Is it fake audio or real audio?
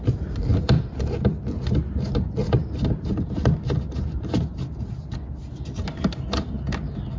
real